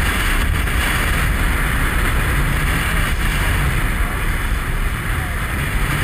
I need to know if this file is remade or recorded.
recorded